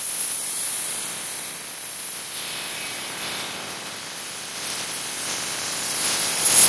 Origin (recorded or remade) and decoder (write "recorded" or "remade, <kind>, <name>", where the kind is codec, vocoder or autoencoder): recorded